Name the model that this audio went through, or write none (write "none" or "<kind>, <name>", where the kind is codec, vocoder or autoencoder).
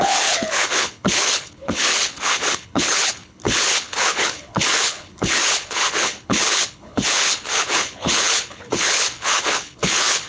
codec, HILCodec